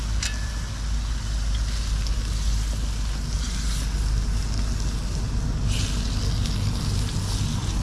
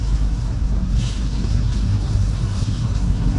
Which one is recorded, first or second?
first